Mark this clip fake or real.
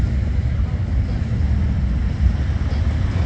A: real